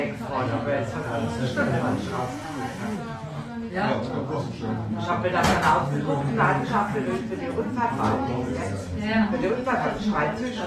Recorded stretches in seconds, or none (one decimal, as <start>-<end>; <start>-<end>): 0.0-10.7